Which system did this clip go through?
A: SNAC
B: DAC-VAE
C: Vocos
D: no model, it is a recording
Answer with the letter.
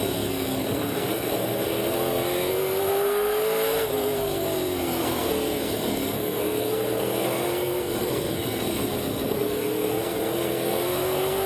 A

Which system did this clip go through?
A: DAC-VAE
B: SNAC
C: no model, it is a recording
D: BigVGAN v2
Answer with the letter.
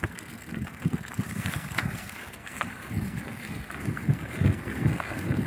B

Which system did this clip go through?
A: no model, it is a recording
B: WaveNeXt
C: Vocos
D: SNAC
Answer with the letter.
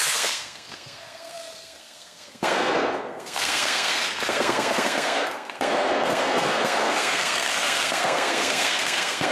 D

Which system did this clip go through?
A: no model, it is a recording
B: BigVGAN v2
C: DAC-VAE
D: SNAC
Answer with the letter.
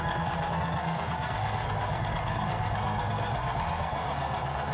D